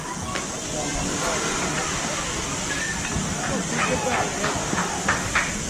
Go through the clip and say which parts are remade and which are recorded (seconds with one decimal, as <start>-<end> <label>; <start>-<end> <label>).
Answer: 0.0-4.6 recorded; 4.6-5.3 remade; 5.3-5.7 recorded